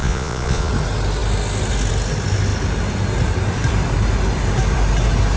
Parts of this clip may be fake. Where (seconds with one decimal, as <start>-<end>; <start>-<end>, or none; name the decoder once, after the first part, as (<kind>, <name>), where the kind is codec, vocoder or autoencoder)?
0.0-0.7 (vocoder, Vocos)

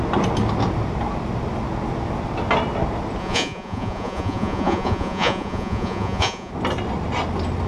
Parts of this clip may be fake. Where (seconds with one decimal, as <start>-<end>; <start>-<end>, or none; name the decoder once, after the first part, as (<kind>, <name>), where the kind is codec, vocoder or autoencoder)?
3.2-6.5 (vocoder, Vocos)

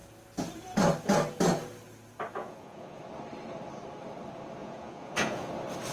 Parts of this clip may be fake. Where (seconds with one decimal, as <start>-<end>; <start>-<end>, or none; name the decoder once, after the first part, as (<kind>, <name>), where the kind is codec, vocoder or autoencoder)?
2.4-3.0 (vocoder, Vocos); 4.6-5.5

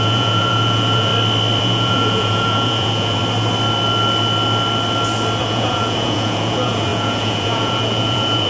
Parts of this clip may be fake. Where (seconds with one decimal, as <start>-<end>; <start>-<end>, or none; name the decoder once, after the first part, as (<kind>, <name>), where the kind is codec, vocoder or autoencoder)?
0.0-1.1 (vocoder, Vocos); 1.6-3.2; 5.4-8.5

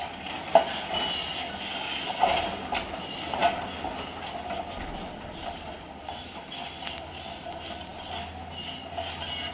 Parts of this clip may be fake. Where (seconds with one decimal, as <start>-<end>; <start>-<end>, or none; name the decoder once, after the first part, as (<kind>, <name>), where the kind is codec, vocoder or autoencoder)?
none

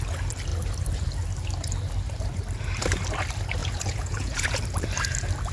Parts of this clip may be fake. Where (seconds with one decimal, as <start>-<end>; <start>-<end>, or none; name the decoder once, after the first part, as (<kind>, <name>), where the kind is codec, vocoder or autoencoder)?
3.6-4.6 (vocoder, Vocos)